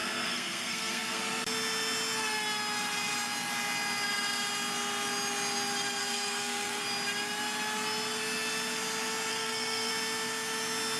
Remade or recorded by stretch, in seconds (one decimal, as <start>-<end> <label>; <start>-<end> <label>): 0.0-1.2 remade; 1.2-6.0 recorded; 6.0-6.8 remade; 6.8-9.3 recorded; 9.3-9.9 remade; 9.9-11.0 recorded